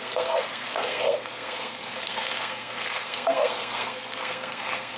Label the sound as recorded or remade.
remade